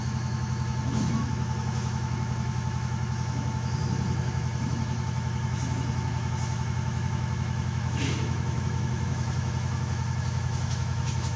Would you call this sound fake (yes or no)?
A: yes